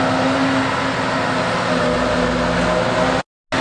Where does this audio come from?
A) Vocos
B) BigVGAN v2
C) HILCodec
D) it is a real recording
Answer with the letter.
D